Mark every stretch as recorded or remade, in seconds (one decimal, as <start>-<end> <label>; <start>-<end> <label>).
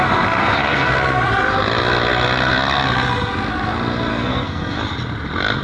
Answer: 0.0-0.4 recorded; 0.4-0.9 remade; 0.9-4.1 recorded; 4.1-4.8 remade; 4.8-5.6 recorded